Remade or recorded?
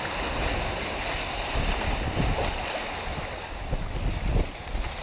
recorded